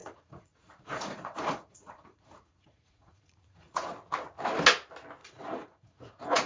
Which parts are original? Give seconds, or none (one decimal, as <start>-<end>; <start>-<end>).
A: 3.9-5.2